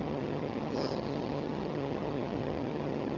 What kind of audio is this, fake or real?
fake